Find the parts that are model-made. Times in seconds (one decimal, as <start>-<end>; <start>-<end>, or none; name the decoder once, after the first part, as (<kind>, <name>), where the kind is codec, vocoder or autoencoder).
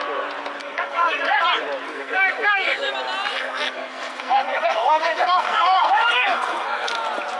0.6-1.4 (codec, SNAC); 1.9-2.9; 3.3-6.9